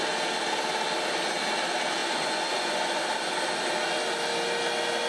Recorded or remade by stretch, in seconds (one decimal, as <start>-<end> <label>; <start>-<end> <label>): 0.0-2.0 recorded; 2.0-3.0 remade; 3.0-5.1 recorded